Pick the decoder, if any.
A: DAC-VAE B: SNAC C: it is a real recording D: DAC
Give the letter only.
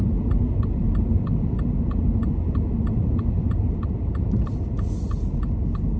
C